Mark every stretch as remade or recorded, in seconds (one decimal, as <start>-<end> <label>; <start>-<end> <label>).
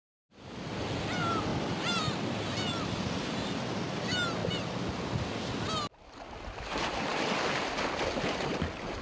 0.0-1.5 recorded; 1.5-2.4 remade; 2.4-4.4 recorded; 4.4-5.4 remade; 5.4-9.0 recorded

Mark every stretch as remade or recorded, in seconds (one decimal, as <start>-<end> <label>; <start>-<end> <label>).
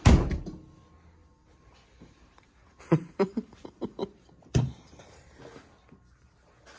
0.0-1.2 recorded; 1.2-5.3 remade; 5.3-6.8 recorded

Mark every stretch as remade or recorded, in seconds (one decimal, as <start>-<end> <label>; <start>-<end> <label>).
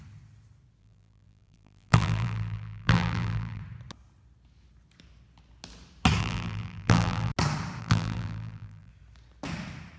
0.0-0.8 recorded; 0.8-3.6 remade; 3.6-6.2 recorded; 6.2-7.3 remade; 7.3-7.8 recorded; 7.8-8.9 remade; 8.9-10.0 recorded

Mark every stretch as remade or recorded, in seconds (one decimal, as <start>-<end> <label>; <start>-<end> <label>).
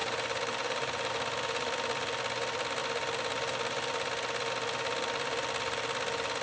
0.0-1.1 remade; 1.1-6.4 recorded